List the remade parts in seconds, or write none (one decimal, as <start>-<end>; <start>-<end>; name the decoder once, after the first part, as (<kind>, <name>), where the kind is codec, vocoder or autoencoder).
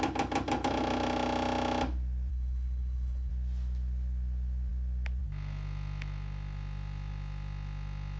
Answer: 2.3-3.3 (codec, HILCodec)